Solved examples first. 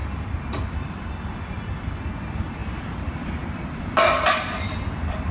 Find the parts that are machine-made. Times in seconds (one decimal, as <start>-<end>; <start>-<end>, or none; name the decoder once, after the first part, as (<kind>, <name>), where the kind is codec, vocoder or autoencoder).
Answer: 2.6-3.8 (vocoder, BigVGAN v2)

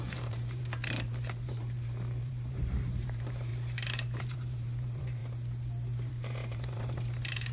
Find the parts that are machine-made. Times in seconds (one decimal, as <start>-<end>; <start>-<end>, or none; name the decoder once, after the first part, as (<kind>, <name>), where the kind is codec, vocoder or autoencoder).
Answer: 0.0-3.5 (vocoder, BigVGAN v2); 4.2-5.2; 6.1-7.5

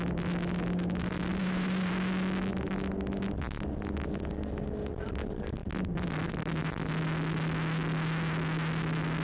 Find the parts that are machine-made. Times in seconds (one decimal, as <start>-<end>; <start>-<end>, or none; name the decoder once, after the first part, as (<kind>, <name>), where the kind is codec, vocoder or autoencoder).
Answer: 1.3-1.9 (vocoder, BigVGAN v2)